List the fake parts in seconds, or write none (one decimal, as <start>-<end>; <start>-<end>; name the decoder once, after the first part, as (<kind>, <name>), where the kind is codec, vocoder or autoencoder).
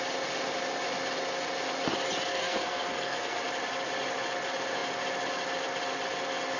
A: 2.3-3.4 (codec, SNAC)